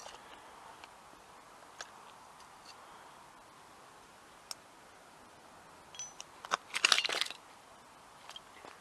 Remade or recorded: recorded